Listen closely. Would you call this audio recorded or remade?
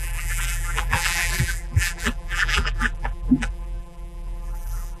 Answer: remade